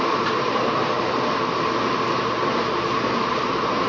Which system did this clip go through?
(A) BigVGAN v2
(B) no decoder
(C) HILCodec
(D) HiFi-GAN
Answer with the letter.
A